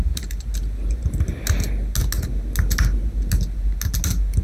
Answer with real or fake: real